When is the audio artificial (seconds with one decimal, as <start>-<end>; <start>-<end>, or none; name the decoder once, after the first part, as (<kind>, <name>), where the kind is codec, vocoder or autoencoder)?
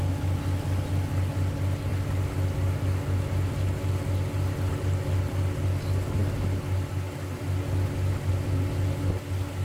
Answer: none